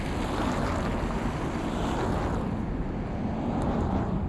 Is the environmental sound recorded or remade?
recorded